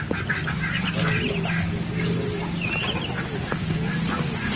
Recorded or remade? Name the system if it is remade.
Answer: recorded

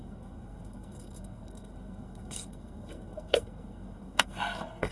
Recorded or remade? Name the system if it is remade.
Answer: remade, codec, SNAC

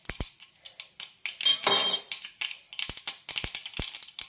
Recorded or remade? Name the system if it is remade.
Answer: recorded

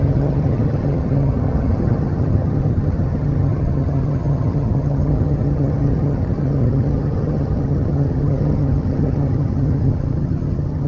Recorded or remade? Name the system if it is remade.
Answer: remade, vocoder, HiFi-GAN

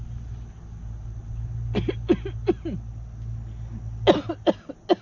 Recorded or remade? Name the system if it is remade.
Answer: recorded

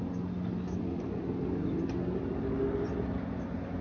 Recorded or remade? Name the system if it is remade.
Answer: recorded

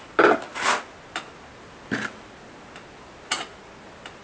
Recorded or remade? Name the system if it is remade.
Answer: recorded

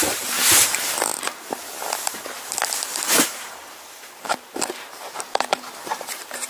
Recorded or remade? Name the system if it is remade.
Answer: remade, vocoder, BigVGAN v2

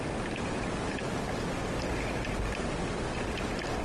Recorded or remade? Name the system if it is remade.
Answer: recorded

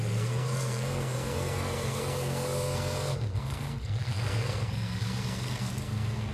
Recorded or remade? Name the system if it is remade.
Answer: remade, codec, SNAC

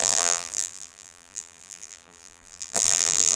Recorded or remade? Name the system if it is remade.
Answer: remade, vocoder, BigVGAN v2